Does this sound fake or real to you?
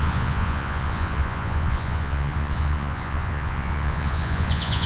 fake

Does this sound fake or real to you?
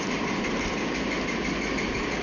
real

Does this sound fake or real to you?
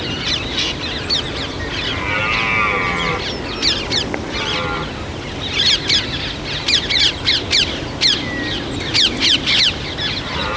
real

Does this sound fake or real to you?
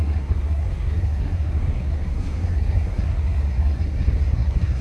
fake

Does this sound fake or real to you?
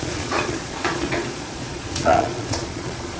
fake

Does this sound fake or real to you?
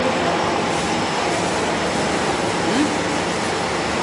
real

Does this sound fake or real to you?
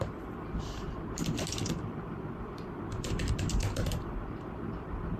fake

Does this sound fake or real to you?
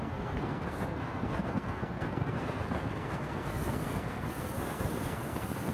fake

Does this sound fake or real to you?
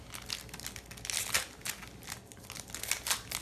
real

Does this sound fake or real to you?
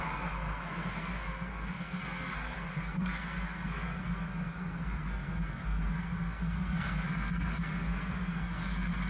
fake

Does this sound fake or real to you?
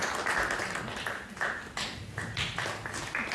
real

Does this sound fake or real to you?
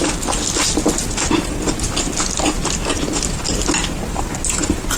real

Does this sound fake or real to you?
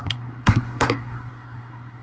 fake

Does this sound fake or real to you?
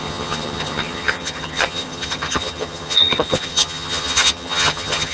fake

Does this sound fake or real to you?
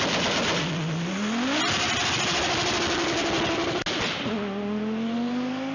real